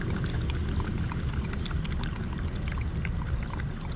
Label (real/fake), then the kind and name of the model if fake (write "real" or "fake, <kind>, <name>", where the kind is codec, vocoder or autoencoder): real